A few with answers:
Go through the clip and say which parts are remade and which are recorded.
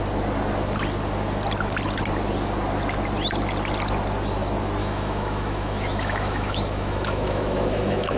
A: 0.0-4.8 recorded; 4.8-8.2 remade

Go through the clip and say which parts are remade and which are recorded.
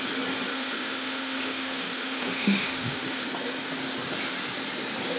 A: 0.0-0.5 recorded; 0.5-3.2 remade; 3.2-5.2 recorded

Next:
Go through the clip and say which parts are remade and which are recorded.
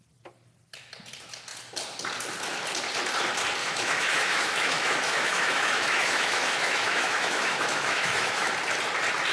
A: 0.0-3.6 recorded; 3.6-8.5 remade; 8.5-9.3 recorded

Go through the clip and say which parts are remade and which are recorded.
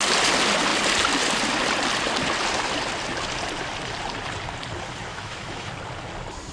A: 0.0-5.1 recorded; 5.1-5.7 remade; 5.7-6.5 recorded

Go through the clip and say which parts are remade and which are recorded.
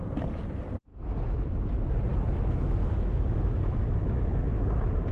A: 0.0-0.9 recorded; 0.9-1.5 remade; 1.5-2.1 recorded; 2.1-4.6 remade; 4.6-5.1 recorded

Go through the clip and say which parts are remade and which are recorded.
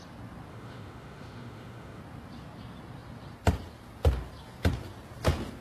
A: 0.0-0.5 recorded; 0.5-2.0 remade; 2.0-5.6 recorded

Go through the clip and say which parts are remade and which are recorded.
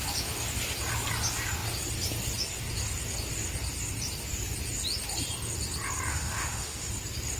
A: 0.0-6.1 recorded; 6.1-6.9 remade; 6.9-7.4 recorded